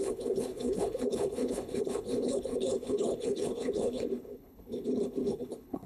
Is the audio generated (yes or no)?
yes